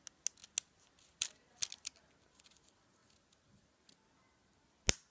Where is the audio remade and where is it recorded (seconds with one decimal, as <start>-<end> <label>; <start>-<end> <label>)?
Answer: 0.0-5.1 recorded